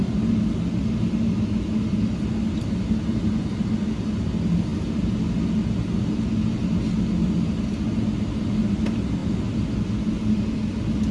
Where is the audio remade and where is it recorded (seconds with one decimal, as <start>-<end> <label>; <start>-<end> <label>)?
0.0-11.1 recorded